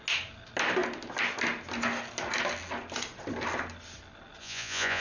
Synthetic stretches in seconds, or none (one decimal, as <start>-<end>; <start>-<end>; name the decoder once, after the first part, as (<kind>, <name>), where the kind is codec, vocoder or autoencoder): 4.4-5.0 (vocoder, Vocos)